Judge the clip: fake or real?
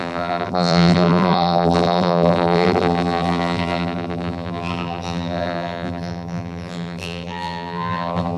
fake